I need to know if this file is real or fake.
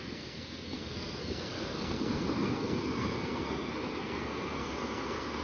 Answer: fake